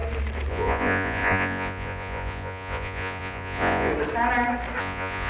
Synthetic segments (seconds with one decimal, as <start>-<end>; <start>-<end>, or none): 0.5-3.9; 4.8-5.3